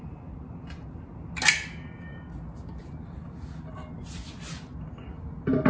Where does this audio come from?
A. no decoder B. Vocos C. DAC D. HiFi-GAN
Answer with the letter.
A